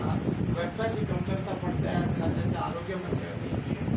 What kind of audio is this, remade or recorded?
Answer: recorded